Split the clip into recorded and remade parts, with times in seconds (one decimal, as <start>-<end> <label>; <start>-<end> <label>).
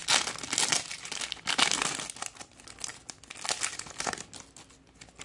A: 0.0-5.2 recorded